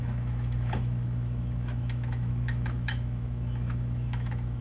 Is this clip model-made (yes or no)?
yes